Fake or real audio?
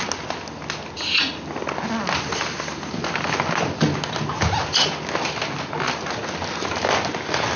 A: real